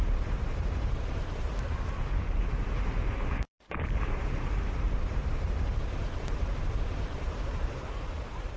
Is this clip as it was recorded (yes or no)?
no